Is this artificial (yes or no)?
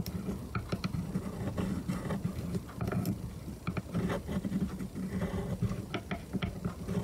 no